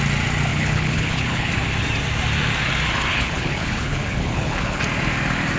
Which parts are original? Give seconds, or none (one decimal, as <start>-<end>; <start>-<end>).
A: 0.0-0.5; 1.5-3.1; 4.8-5.6